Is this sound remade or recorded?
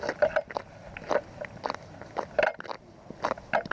recorded